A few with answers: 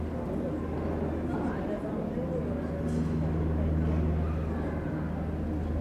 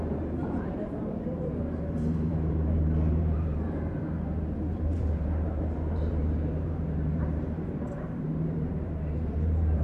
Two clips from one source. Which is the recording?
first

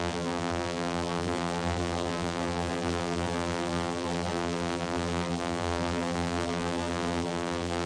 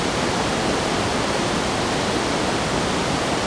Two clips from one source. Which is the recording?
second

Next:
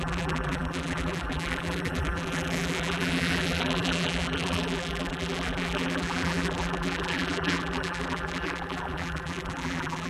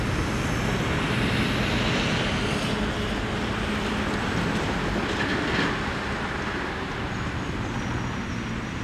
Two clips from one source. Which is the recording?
second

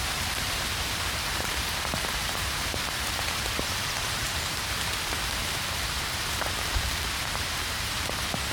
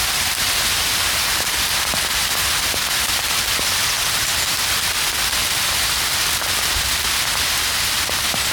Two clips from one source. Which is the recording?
second